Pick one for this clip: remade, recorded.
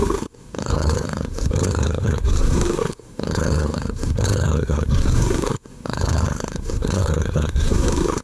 remade